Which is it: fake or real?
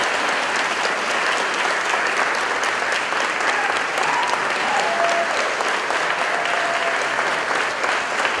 real